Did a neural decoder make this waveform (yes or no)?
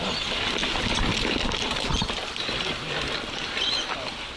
no